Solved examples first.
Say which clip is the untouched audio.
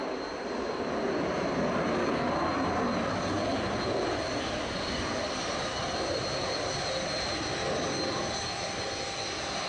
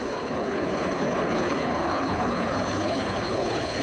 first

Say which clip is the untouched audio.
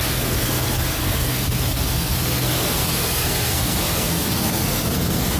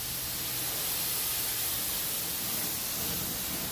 second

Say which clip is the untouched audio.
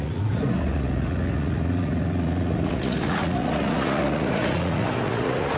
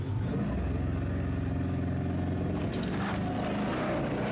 second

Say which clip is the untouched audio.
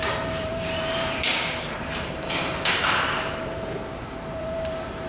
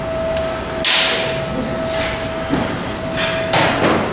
second